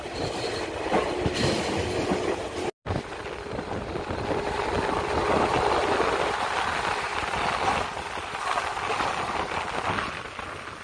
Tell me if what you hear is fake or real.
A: real